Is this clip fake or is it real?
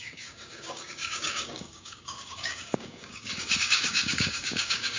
fake